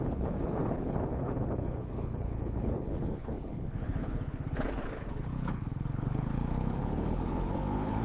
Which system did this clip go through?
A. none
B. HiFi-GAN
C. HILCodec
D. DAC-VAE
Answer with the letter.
C